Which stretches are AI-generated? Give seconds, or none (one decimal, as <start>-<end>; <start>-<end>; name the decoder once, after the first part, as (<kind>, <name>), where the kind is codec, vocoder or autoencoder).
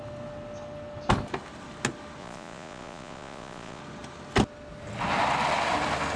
2.2-3.8 (vocoder, Vocos)